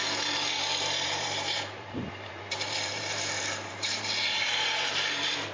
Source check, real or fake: fake